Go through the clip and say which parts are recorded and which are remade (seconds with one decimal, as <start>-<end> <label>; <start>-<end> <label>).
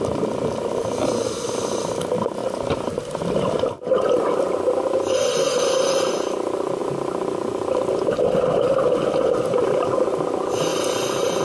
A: 0.0-2.4 recorded; 2.4-3.2 remade; 3.2-8.5 recorded; 8.5-9.0 remade; 9.0-10.7 recorded; 10.7-11.4 remade